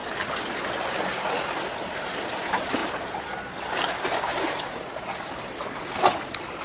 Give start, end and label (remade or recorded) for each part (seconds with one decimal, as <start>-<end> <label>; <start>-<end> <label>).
0.0-6.6 recorded